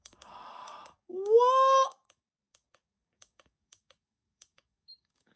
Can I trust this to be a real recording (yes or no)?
no